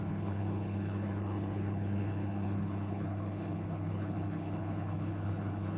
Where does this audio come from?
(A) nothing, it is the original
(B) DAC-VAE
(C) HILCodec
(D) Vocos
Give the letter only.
C